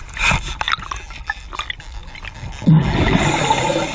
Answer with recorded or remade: recorded